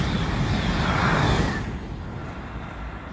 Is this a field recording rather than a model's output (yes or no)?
yes